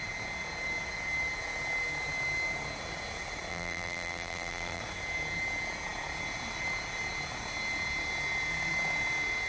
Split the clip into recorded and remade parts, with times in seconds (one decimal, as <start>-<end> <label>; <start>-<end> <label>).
0.0-3.5 recorded; 3.5-4.8 remade; 4.8-9.5 recorded